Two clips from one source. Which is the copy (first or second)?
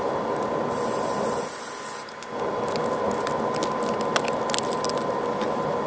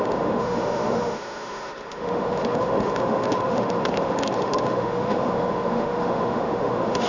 second